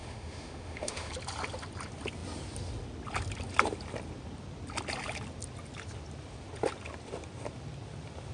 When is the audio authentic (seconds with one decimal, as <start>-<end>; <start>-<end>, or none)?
1.1-8.3